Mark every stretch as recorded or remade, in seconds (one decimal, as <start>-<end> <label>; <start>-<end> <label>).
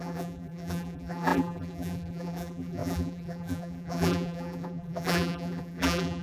0.0-6.2 remade